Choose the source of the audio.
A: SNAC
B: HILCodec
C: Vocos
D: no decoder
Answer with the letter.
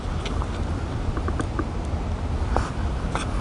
D